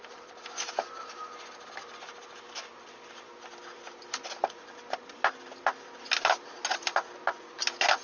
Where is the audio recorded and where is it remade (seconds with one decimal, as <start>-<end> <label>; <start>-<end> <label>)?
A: 0.0-8.0 recorded